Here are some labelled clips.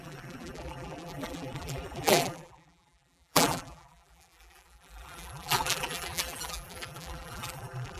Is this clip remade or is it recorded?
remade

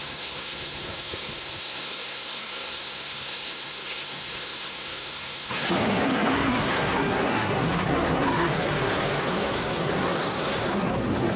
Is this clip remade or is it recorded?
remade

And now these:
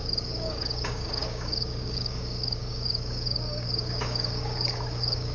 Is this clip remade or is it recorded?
remade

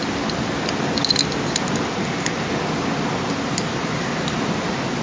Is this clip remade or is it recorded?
recorded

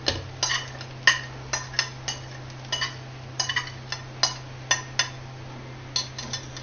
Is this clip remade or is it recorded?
recorded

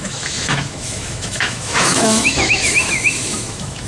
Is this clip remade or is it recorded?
remade